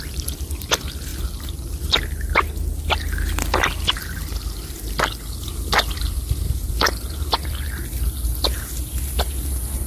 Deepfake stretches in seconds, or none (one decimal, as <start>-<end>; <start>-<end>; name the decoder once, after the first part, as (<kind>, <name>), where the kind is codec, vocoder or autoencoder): none